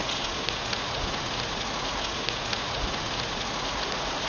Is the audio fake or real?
fake